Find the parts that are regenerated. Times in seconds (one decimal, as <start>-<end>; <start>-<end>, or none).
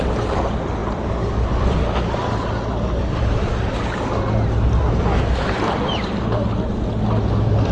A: none